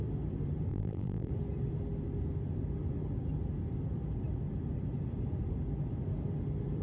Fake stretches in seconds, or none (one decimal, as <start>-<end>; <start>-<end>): 0.7-1.3